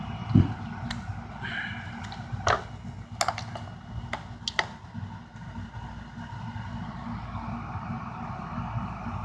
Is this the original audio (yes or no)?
yes